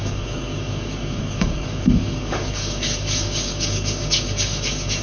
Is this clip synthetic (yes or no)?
yes